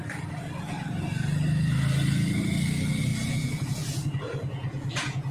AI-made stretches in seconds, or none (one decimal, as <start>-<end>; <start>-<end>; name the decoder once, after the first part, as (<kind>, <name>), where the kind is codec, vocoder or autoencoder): 3.1-5.3 (vocoder, Vocos)